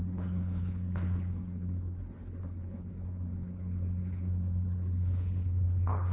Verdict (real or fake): fake